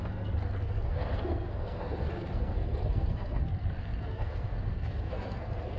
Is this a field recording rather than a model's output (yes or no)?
no